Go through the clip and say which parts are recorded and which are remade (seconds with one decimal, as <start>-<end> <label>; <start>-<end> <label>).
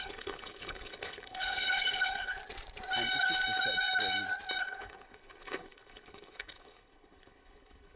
0.0-2.4 remade; 2.4-4.6 recorded; 4.6-8.0 remade